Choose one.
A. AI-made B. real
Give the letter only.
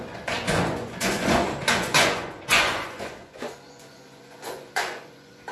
A